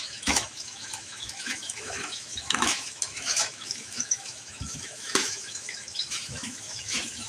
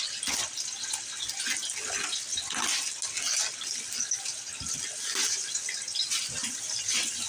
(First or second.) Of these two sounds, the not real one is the first